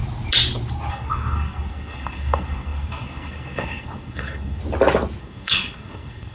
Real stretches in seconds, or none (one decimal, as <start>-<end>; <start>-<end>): 0.0-0.9; 4.6-5.2

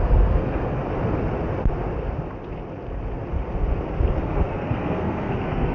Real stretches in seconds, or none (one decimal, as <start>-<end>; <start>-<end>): 0.8-4.2

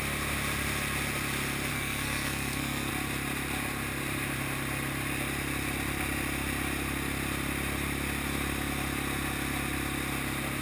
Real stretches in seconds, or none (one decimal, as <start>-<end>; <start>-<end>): 0.0-1.7; 2.9-10.6

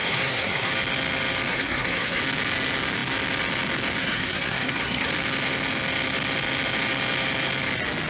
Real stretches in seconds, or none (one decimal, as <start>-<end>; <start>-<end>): 0.7-1.5; 2.2-4.0; 5.1-8.1

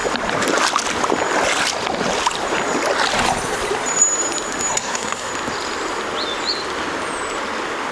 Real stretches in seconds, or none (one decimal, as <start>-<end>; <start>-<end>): 0.0-4.7; 5.3-7.9

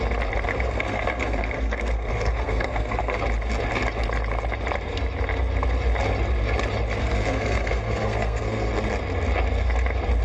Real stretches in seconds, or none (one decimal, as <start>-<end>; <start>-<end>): 0.0-0.5; 3.2-7.0; 8.7-10.2

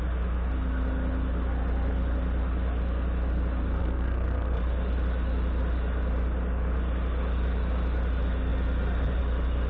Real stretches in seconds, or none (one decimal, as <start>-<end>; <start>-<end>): 0.0-3.8; 4.6-9.7